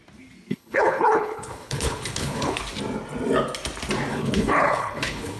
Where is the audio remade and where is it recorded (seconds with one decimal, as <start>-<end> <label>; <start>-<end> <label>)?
0.0-0.5 recorded; 0.5-2.6 remade; 2.6-4.1 recorded; 4.1-5.4 remade